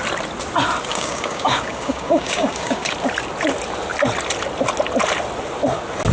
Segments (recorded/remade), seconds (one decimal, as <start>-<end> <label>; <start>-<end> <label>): 0.0-0.9 recorded; 0.9-2.9 remade; 2.9-6.1 recorded